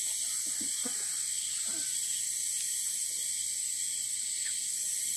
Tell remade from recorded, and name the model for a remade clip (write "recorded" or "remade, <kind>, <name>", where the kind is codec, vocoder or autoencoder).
recorded